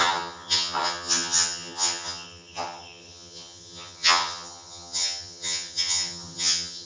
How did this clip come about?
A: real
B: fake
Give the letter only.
B